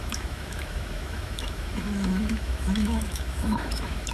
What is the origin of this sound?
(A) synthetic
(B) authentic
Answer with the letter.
A